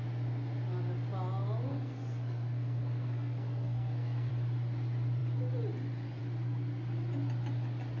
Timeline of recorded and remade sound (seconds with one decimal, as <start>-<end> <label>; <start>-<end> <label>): 0.0-1.7 recorded; 1.7-4.3 remade; 4.3-8.0 recorded